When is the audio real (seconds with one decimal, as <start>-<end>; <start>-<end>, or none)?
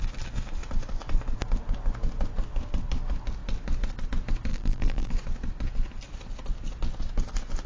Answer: 0.0-4.5; 5.1-7.7